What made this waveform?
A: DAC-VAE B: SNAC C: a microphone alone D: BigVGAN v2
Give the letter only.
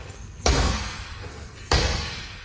B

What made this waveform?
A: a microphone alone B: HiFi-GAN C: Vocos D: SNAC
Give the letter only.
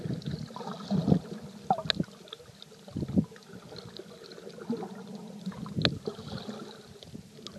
A